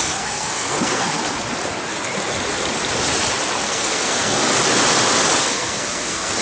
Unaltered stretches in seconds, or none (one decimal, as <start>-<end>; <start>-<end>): 1.2-3.6; 4.4-5.4